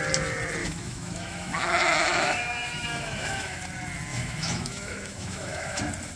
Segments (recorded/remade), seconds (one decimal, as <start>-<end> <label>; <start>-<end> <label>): 0.0-0.6 recorded; 0.6-3.6 remade; 3.6-4.1 recorded; 4.1-5.8 remade; 5.8-6.2 recorded